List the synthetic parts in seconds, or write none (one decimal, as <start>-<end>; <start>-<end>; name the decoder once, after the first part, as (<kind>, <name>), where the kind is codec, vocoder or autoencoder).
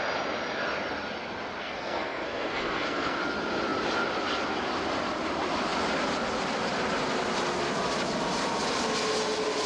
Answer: 1.6-3.2 (codec, SNAC)